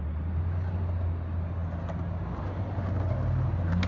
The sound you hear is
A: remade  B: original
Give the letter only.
B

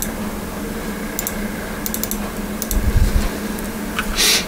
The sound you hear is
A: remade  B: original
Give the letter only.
B